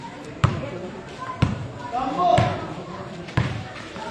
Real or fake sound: fake